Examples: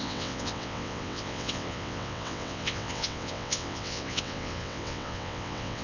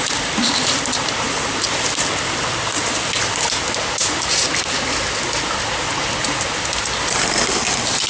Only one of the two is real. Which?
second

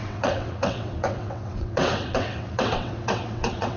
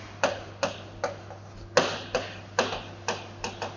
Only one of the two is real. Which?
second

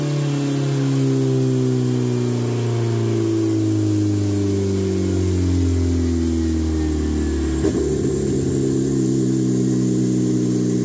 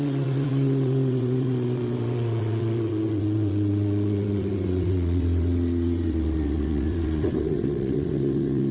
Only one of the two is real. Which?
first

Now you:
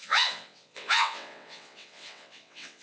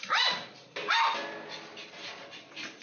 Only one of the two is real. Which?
second